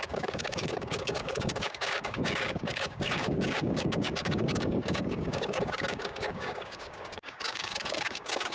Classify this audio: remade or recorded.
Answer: remade